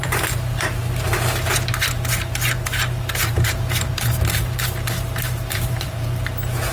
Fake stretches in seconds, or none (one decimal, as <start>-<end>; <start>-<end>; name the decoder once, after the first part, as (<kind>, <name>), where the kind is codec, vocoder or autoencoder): 0.0-0.8 (vocoder, BigVGAN v2); 1.9-6.7

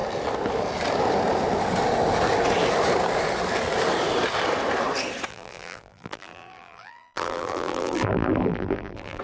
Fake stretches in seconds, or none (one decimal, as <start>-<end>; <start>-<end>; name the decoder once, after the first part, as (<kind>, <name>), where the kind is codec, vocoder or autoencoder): 5.3-9.2 (vocoder, BigVGAN v2)

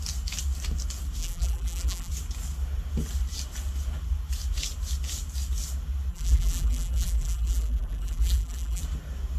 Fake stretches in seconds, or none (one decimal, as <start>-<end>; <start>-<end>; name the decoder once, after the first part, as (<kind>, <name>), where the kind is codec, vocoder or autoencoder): 1.2-2.1 (vocoder, BigVGAN v2); 6.1-8.8